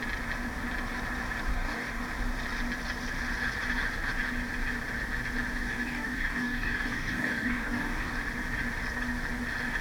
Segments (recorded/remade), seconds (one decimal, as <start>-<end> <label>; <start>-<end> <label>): 0.0-1.5 recorded; 1.5-2.0 remade; 2.0-5.5 recorded; 5.5-8.1 remade; 8.1-9.8 recorded